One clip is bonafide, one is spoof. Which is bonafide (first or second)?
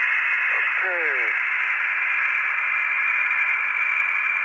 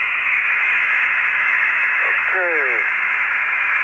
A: first